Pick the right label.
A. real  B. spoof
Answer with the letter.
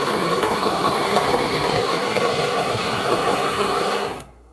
B